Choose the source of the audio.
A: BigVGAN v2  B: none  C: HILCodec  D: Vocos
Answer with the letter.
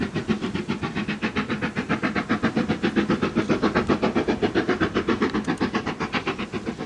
B